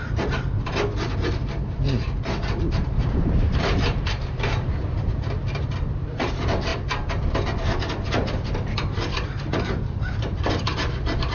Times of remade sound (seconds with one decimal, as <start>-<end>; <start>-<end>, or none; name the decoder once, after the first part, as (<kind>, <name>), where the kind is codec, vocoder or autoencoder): 0.0-6.7 (vocoder, BigVGAN v2); 10.1-11.3